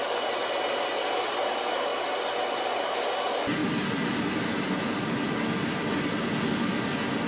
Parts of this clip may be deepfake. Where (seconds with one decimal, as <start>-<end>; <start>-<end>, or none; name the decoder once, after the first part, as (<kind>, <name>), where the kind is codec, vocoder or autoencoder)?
none

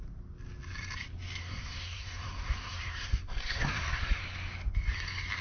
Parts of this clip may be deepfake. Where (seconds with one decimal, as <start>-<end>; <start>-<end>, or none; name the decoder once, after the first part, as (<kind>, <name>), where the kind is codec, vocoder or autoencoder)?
1.4-4.2 (codec, SNAC)

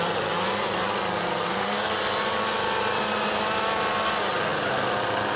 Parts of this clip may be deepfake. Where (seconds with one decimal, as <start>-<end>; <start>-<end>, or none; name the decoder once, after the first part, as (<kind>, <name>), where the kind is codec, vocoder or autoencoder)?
1.3-1.9 (codec, SNAC)

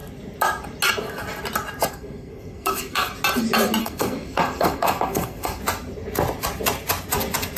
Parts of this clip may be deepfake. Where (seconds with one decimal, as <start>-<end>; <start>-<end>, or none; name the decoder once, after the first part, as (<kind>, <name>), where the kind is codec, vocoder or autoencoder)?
1.9-3.1 (codec, SNAC); 3.8-5.6

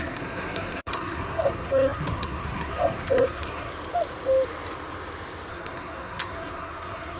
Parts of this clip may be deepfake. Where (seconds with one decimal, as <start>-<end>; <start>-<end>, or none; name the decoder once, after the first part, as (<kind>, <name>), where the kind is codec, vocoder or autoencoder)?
0.0-3.7 (codec, SNAC); 5.5-7.2

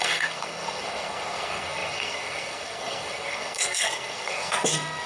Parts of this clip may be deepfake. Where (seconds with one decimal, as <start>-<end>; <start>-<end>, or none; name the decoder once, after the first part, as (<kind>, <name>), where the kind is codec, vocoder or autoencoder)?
0.0-5.1 (codec, SNAC)